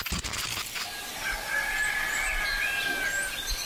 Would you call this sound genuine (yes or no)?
yes